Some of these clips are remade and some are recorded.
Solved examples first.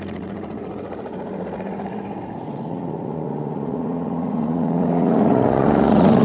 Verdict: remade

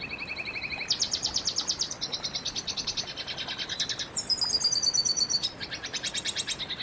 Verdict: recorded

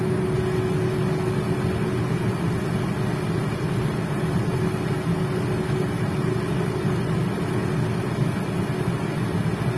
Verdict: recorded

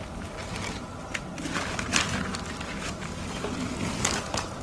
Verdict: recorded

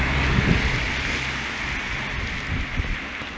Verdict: recorded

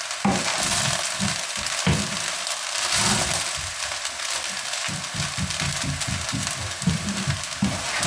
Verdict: recorded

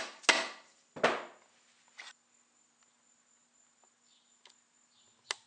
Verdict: recorded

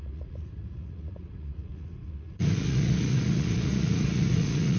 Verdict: remade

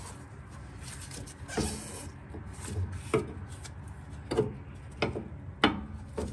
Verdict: recorded